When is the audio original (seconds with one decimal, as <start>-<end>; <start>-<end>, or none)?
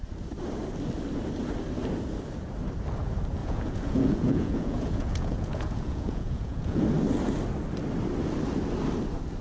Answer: 0.0-3.4; 6.8-9.4